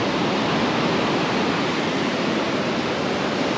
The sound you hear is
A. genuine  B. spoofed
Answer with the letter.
A